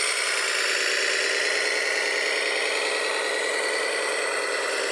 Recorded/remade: recorded